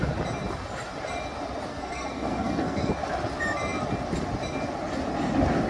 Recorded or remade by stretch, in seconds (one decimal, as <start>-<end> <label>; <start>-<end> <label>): 0.0-1.7 recorded; 1.7-2.9 remade; 2.9-5.7 recorded